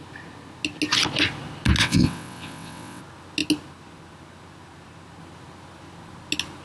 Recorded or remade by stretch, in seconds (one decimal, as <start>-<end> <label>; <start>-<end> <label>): 0.0-1.8 recorded; 1.8-3.0 remade; 3.0-6.6 recorded